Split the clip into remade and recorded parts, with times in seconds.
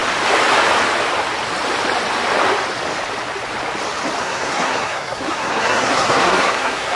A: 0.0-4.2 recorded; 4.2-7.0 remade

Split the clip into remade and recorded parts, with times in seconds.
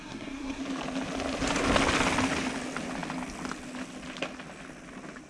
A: 0.0-0.6 remade; 0.6-5.3 recorded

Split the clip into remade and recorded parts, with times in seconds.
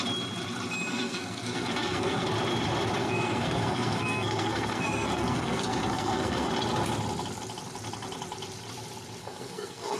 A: 0.0-0.9 recorded; 0.9-2.3 remade; 2.3-3.0 recorded; 3.0-6.5 remade; 6.5-9.2 recorded; 9.2-10.0 remade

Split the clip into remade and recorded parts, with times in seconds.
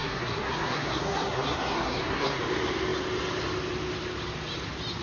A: 0.0-2.4 remade; 2.4-5.0 recorded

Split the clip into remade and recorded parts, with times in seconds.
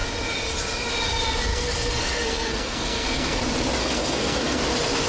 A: 0.0-1.5 recorded; 1.5-3.4 remade; 3.4-3.8 recorded; 3.8-4.6 remade; 4.6-5.1 recorded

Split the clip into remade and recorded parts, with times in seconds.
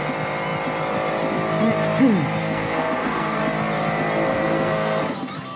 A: 0.0-2.4 recorded; 2.4-3.4 remade; 3.4-4.3 recorded; 4.3-5.0 remade; 5.0-5.6 recorded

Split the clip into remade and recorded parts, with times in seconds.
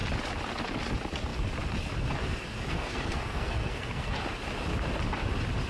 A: 0.0-2.7 recorded; 2.7-4.2 remade; 4.2-5.7 recorded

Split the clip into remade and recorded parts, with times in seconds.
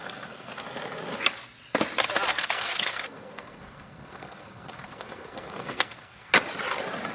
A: 0.0-0.6 remade; 0.6-2.3 recorded; 2.3-6.3 remade; 6.3-7.1 recorded